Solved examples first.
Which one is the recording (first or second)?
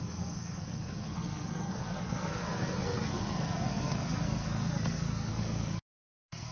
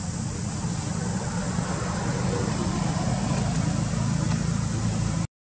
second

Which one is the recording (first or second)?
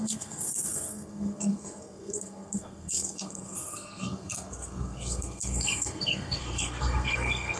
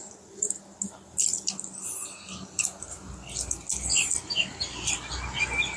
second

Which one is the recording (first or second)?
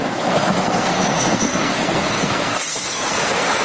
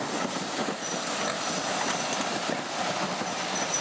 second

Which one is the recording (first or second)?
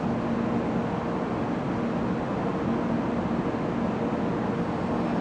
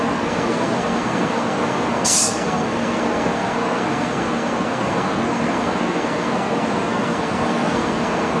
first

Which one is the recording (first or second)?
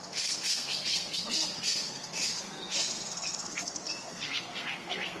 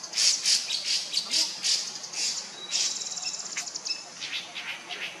second